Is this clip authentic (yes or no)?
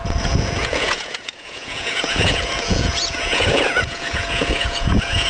no